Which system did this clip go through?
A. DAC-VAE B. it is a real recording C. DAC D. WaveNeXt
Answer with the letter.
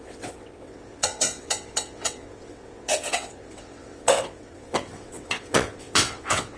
D